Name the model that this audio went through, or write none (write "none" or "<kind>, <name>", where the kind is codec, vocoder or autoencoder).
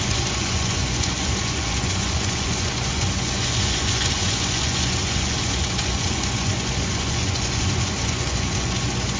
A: vocoder, Vocos